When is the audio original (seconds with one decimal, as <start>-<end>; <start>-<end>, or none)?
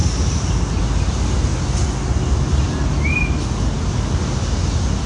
0.0-5.1